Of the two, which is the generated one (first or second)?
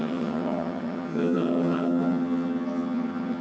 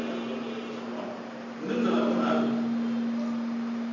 first